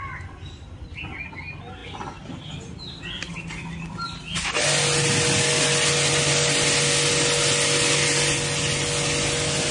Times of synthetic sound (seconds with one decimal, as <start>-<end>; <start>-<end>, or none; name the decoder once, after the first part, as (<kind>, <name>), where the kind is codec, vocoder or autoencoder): none